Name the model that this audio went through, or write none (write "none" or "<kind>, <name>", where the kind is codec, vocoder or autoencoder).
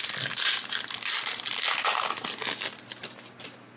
none